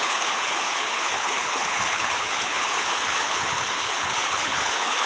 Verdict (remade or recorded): remade